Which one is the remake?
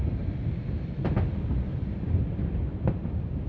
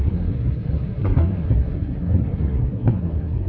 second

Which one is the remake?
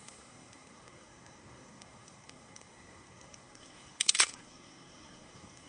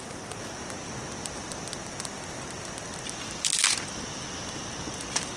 first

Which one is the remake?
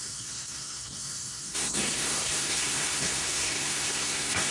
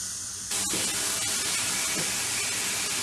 first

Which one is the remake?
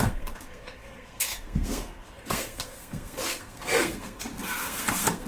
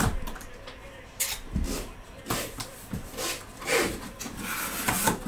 first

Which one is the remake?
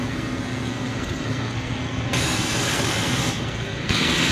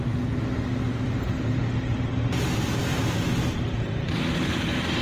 first